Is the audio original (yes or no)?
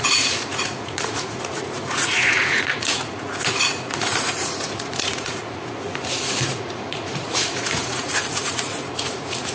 no